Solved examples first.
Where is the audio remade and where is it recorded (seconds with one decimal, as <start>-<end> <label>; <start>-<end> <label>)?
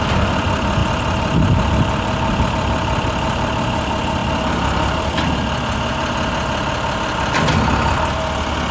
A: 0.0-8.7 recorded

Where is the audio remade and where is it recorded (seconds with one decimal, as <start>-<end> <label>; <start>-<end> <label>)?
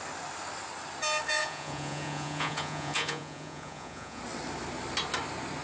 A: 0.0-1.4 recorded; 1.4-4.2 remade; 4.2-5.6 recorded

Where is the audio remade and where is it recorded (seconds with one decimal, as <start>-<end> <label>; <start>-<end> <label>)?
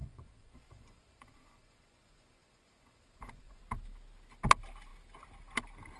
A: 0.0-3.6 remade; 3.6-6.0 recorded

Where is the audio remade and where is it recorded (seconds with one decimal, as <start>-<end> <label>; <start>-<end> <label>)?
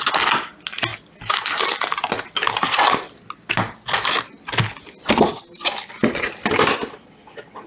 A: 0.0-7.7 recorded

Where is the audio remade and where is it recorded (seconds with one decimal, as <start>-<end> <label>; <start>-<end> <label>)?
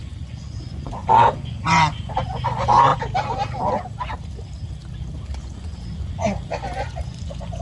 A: 0.0-2.9 remade; 2.9-5.4 recorded; 5.4-7.6 remade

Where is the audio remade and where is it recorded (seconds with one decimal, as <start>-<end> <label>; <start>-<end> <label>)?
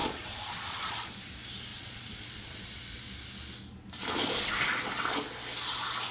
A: 0.0-1.1 remade; 1.1-1.7 recorded; 1.7-3.0 remade; 3.0-6.1 recorded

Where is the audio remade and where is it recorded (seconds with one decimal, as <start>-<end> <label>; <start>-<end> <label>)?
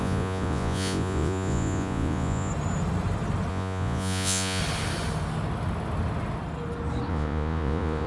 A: 0.0-2.5 remade; 2.5-3.5 recorded; 3.5-4.6 remade; 4.6-7.1 recorded; 7.1-8.1 remade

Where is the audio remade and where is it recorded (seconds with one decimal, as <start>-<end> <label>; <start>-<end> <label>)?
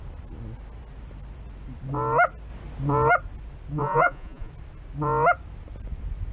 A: 0.0-3.8 recorded; 3.8-4.5 remade; 4.5-6.3 recorded